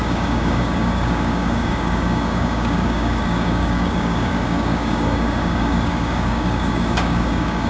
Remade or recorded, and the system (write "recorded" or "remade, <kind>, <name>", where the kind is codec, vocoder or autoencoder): remade, codec, DAC